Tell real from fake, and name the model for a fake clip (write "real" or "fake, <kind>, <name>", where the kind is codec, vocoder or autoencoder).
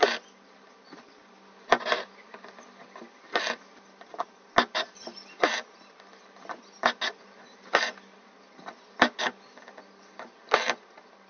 real